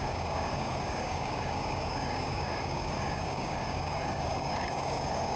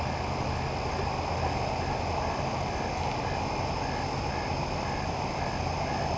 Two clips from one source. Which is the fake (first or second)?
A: first